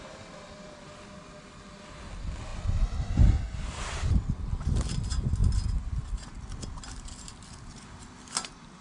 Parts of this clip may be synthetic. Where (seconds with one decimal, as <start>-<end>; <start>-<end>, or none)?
none